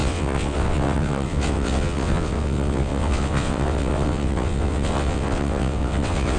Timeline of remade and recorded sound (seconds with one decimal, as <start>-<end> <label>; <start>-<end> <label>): 0.0-6.4 remade